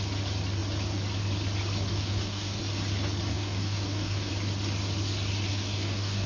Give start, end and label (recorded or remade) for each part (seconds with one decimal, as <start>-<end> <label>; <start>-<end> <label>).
0.0-1.9 recorded; 1.9-2.6 remade; 2.6-3.3 recorded; 3.3-4.3 remade; 4.3-5.5 recorded; 5.5-6.3 remade